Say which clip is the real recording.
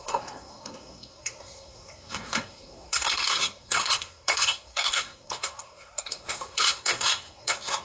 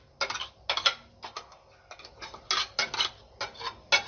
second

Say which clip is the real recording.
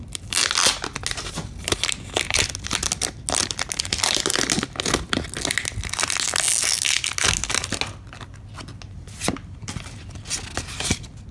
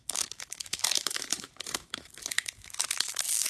first